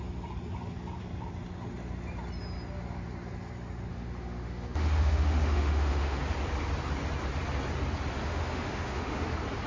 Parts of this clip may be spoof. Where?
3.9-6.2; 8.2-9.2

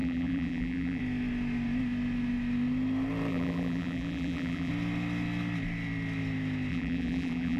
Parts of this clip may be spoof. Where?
0.0-1.0; 3.3-4.7; 6.7-7.6

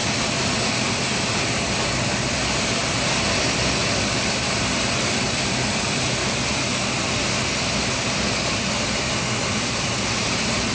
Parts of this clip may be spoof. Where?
0.0-10.7

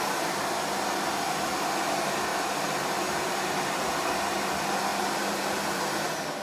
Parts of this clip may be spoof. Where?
2.3-4.5; 4.9-5.8